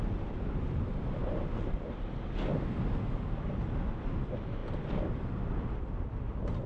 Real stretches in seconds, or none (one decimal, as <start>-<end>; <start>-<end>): 0.0-1.2; 1.8-6.7